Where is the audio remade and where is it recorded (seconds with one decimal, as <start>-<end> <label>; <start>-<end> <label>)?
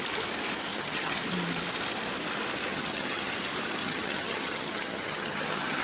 0.0-0.7 recorded; 0.7-1.2 remade; 1.2-2.7 recorded; 2.7-3.3 remade; 3.3-3.8 recorded; 3.8-5.8 remade